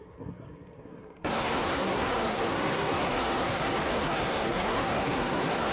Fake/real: fake